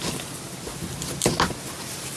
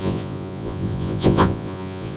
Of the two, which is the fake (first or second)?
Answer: second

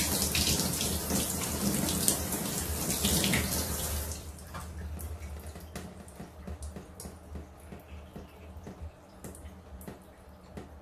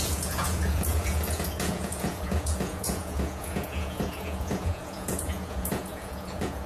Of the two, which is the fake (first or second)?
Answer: second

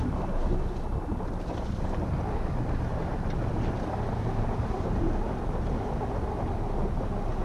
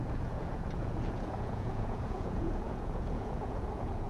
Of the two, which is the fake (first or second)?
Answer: second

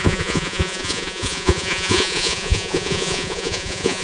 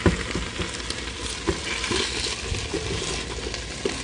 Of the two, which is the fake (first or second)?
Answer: first